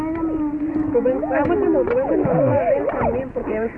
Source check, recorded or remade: recorded